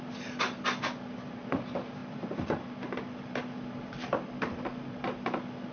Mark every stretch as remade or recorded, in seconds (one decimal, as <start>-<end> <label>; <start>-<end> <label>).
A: 0.0-5.7 recorded